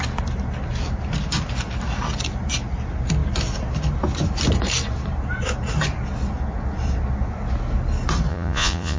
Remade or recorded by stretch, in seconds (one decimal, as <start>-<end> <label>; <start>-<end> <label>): 0.0-8.3 recorded; 8.3-9.0 remade